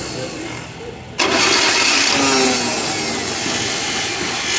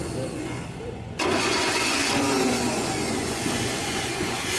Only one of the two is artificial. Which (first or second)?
second